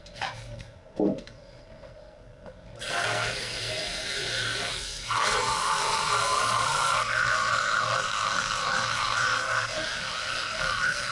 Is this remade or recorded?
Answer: remade